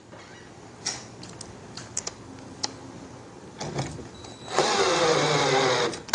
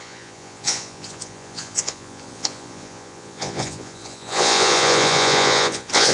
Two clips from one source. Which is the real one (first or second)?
first